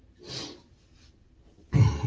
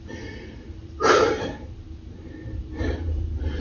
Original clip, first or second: first